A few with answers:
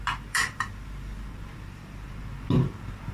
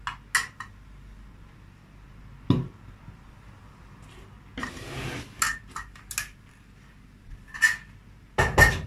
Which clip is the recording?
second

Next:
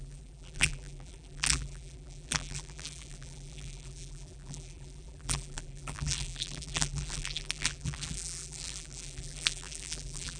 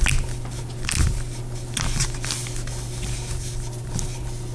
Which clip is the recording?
second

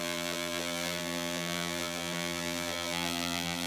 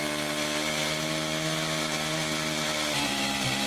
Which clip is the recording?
second